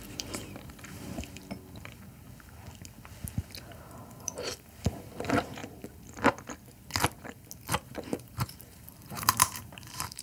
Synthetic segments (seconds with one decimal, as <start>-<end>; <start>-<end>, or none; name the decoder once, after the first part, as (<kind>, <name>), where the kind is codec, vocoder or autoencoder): 0.0-1.4 (vocoder, BigVGAN v2); 4.2-5.6; 7.7-10.2

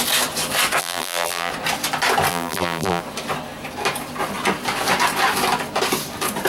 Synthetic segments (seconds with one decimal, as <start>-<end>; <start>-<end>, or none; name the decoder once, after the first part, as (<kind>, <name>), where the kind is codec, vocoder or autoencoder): 0.8-1.5 (vocoder, BigVGAN v2); 2.3-3.0

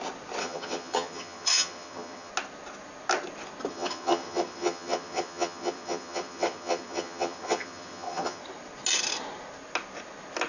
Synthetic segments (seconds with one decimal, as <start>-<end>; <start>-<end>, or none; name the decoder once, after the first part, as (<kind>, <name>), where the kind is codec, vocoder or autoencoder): 0.4-2.3 (vocoder, HiFi-GAN); 3.7-8.4

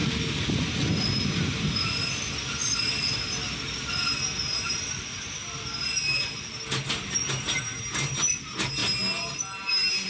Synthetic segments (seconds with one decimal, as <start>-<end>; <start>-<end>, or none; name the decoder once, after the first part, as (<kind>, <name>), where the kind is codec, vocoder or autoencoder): none

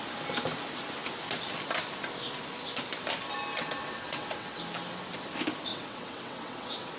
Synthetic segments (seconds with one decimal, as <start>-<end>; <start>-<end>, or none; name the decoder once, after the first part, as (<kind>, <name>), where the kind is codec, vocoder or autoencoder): 3.5-4.6 (vocoder, WaveNeXt); 5.7-7.0